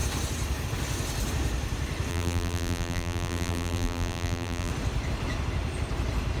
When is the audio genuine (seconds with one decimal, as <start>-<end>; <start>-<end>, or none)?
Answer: 0.0-2.1; 4.7-6.4